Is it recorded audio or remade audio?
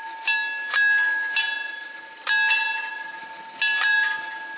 recorded